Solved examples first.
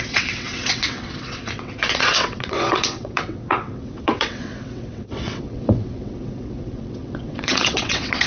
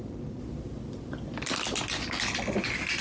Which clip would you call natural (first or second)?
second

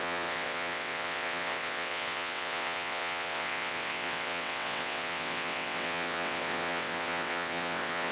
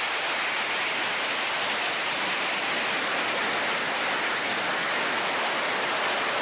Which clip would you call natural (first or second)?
second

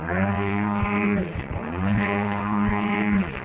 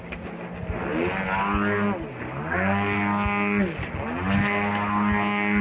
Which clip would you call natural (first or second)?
second